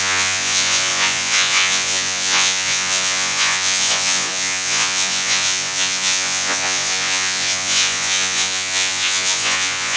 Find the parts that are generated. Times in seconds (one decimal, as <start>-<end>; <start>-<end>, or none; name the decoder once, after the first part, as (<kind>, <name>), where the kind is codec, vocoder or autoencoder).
0.0-10.0 (vocoder, Vocos)

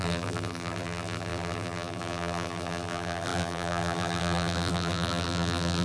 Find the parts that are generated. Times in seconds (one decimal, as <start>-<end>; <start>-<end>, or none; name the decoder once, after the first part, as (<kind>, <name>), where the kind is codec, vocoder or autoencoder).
0.0-5.8 (vocoder, BigVGAN v2)